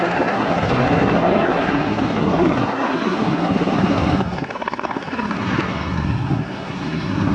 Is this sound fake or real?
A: fake